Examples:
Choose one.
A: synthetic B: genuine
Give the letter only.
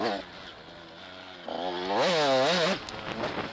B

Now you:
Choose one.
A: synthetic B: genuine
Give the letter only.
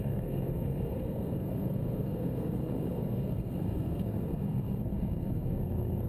A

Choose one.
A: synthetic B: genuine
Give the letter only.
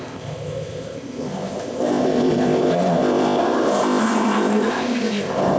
A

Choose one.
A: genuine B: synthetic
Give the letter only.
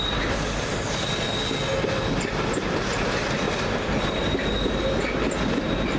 A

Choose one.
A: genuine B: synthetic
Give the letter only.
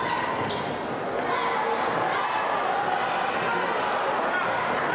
A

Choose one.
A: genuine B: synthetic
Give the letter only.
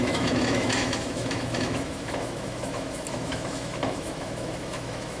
B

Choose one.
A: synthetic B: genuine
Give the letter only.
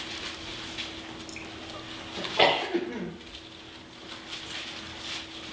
B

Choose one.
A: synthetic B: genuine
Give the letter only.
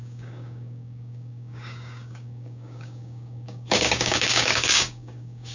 A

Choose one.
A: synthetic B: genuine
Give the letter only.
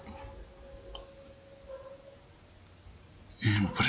B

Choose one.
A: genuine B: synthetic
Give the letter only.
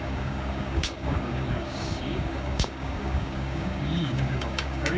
B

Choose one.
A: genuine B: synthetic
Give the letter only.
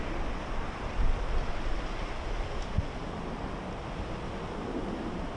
A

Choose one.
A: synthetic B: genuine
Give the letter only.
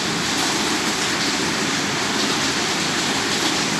B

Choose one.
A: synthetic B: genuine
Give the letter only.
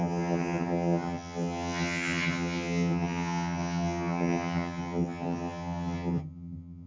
A